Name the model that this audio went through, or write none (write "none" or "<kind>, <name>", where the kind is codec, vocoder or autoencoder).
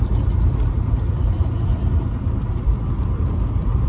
vocoder, BigVGAN v2